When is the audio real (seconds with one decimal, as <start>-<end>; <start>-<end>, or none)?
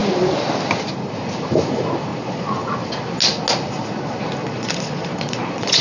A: 0.0-2.1; 2.7-4.4